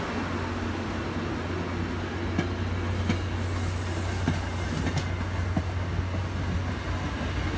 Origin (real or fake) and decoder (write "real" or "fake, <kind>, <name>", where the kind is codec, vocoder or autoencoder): real